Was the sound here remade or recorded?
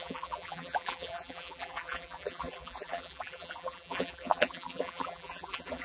remade